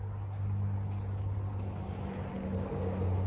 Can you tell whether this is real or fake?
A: real